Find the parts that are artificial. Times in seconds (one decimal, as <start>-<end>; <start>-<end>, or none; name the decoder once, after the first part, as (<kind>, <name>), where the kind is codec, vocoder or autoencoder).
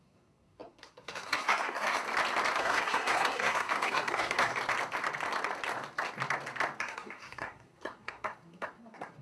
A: 0.0-2.0 (codec, SNAC); 2.6-4.5; 6.8-9.2